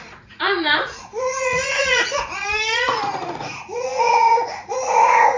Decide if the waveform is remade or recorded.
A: remade